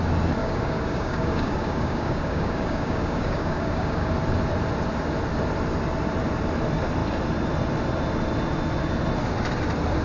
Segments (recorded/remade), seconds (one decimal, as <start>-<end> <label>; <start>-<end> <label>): 0.0-0.4 recorded; 0.4-4.1 remade; 4.1-10.0 recorded